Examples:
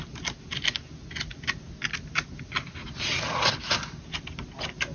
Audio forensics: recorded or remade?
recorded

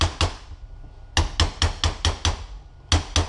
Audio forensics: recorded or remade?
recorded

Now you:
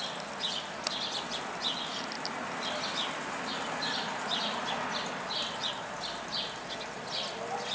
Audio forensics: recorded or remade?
recorded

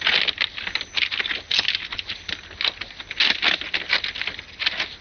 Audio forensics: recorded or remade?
recorded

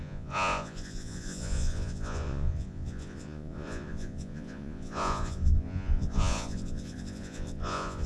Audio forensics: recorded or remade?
remade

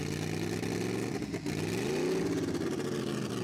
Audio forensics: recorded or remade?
recorded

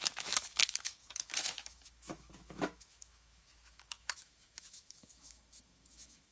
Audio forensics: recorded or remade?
remade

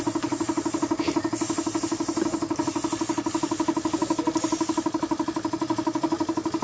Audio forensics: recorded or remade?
recorded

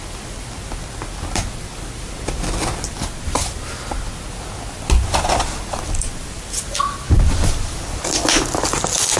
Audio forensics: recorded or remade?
recorded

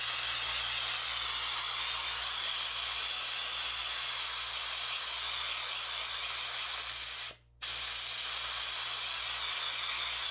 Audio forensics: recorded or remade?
recorded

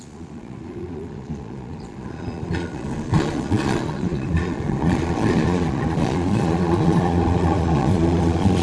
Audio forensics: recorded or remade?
remade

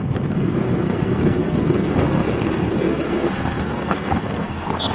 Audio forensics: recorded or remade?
remade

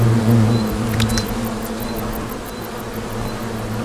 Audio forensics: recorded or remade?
recorded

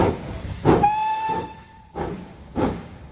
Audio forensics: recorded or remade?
remade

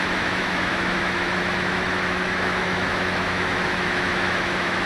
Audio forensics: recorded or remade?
remade